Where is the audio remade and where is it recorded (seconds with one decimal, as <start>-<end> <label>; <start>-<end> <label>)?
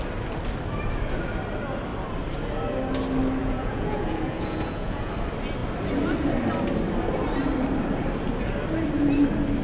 0.0-3.4 recorded; 3.4-5.1 remade; 5.1-9.6 recorded